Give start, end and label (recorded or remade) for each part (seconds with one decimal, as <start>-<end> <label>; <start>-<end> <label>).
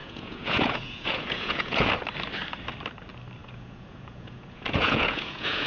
0.0-1.9 remade; 1.9-3.4 recorded; 3.4-5.7 remade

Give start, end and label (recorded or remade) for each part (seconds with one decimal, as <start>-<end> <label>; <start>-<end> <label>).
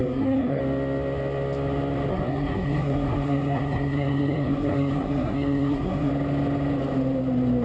0.0-0.6 remade; 0.6-2.1 recorded; 2.1-6.1 remade; 6.1-7.6 recorded